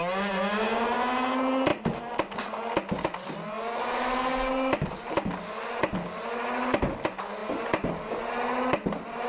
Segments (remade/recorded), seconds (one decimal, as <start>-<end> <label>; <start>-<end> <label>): 0.0-9.3 recorded